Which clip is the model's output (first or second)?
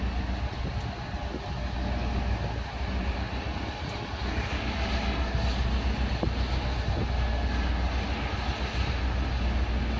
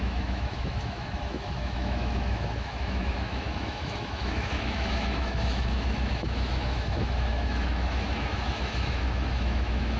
second